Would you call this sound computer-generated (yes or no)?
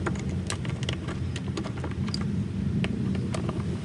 no